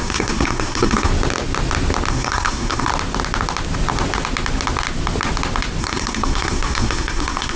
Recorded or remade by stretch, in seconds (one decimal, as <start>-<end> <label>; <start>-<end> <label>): 0.0-1.1 remade; 1.1-2.1 recorded; 2.1-2.9 remade; 2.9-5.8 recorded; 5.8-7.6 remade